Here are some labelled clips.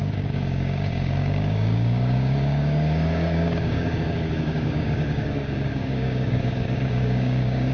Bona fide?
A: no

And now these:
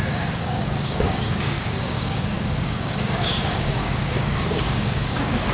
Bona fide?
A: no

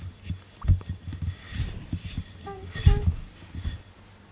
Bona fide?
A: yes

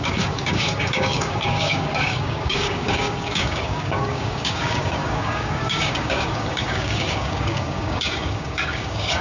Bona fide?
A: no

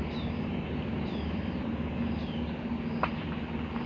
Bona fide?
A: yes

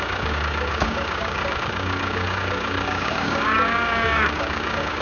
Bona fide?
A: no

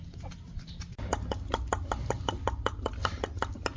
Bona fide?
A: yes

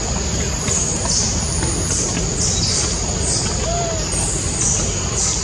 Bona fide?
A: yes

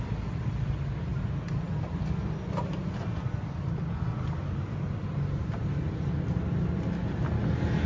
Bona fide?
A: yes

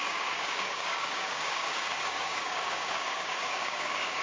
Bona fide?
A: no